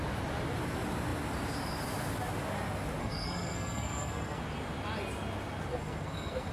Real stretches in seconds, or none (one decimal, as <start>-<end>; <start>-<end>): 0.0-3.0; 4.4-5.7

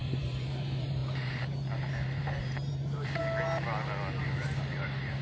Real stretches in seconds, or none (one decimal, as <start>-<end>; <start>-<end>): 3.2-4.2

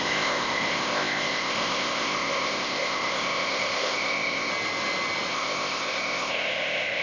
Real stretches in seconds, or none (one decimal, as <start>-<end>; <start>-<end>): 4.5-5.3